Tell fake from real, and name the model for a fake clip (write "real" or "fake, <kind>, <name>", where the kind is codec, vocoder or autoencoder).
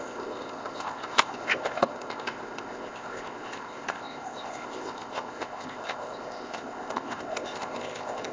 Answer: fake, codec, ZipCodec